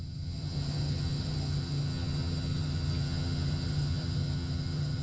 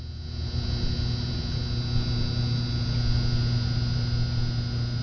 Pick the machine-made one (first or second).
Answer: first